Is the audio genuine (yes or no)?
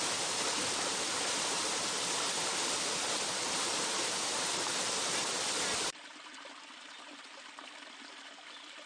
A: yes